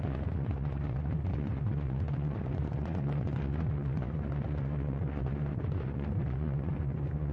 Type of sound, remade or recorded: remade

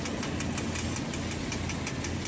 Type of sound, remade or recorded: recorded